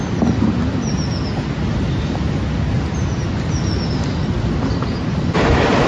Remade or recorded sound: recorded